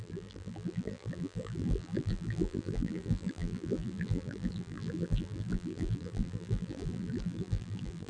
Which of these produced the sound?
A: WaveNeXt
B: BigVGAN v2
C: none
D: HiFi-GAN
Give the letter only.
B